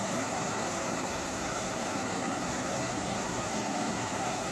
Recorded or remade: remade